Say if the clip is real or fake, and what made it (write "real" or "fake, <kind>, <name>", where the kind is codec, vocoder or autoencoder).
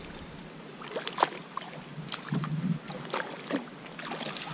real